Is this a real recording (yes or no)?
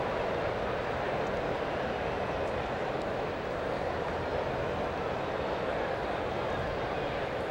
yes